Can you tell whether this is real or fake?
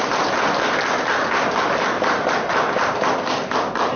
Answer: real